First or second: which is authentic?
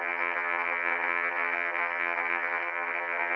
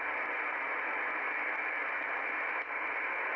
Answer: second